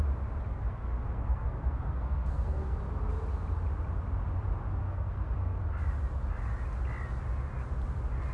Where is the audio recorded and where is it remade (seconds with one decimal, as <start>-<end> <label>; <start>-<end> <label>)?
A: 0.0-0.5 recorded; 0.5-2.8 remade; 2.8-4.8 recorded; 4.8-5.6 remade; 5.6-8.3 recorded